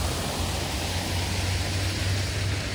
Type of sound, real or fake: real